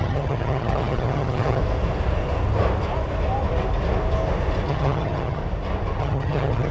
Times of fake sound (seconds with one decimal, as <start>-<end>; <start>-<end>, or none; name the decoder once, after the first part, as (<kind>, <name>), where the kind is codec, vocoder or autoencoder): 0.0-1.6 (vocoder, HiFi-GAN); 4.7-5.4; 6.0-6.7